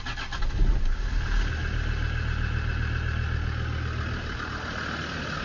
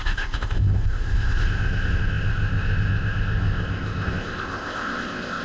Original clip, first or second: first